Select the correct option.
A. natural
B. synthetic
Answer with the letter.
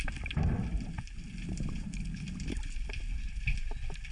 A